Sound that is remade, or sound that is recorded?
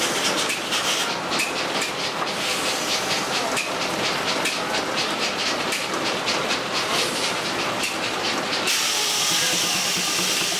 remade